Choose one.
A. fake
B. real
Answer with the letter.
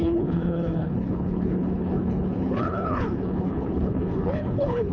A